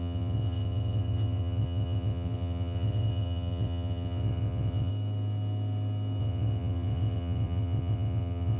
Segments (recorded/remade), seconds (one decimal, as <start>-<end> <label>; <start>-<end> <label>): 0.0-4.9 remade; 4.9-6.2 recorded; 6.2-8.6 remade